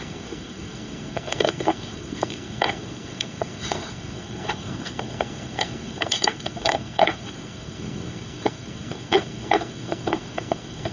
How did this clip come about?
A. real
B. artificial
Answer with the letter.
B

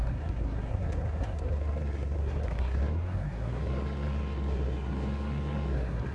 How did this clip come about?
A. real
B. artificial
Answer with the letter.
B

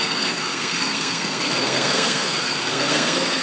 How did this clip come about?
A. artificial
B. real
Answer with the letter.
A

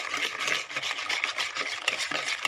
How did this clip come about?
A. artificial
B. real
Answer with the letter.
B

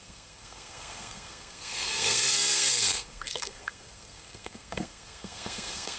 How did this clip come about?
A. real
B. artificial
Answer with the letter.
B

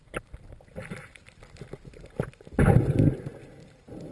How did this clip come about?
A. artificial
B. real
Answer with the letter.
B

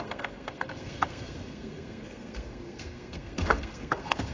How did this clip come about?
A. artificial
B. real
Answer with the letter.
A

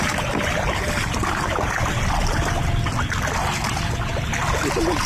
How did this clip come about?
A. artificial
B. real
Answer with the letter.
B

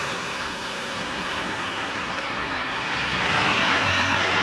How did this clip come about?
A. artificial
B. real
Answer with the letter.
A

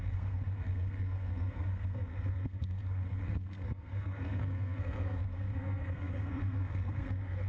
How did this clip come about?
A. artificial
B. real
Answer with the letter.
A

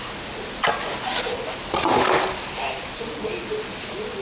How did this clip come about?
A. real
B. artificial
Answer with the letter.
A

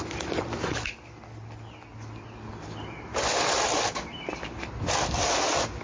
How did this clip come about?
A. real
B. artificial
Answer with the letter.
A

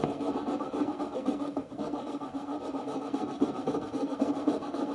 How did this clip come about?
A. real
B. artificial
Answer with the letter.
B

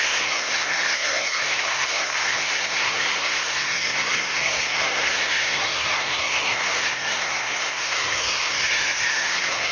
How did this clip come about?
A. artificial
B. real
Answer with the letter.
A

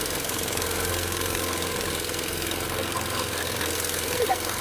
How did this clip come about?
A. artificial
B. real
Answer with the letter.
A